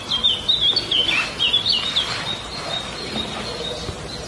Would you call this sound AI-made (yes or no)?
no